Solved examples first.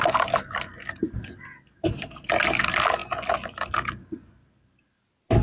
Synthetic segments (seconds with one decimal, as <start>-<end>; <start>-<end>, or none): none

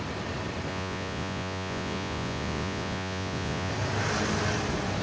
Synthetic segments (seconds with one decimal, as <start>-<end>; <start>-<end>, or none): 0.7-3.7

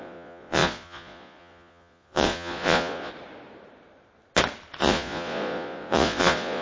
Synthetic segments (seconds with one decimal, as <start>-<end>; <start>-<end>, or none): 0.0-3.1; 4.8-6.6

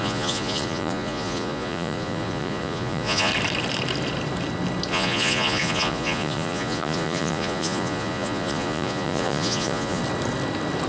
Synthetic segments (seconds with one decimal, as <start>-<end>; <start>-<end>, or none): 0.0-3.3; 4.9-10.0

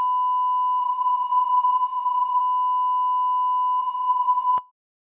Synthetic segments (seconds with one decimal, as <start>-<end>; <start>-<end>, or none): 0.8-2.4; 3.8-4.7